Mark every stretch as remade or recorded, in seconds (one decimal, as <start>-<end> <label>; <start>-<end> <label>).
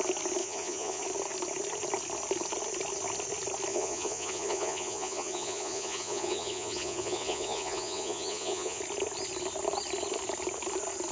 0.0-0.4 recorded; 0.4-1.0 remade; 1.0-3.7 recorded; 3.7-8.8 remade; 8.8-11.1 recorded